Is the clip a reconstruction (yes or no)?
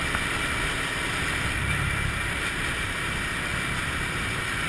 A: no